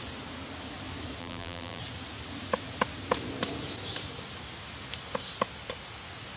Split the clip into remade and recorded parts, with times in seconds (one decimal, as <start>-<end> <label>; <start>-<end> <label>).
0.0-1.2 recorded; 1.2-1.8 remade; 1.8-6.4 recorded